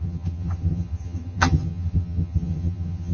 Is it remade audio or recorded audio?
remade